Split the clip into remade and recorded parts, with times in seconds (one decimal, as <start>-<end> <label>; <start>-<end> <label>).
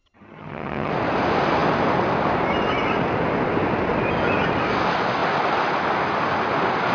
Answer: 0.0-0.9 remade; 0.9-6.9 recorded